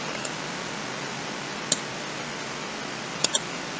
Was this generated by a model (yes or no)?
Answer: no